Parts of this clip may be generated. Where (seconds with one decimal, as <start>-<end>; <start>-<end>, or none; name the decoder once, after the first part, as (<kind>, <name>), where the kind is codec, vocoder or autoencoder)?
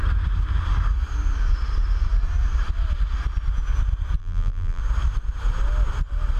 4.2-4.8 (vocoder, BigVGAN v2)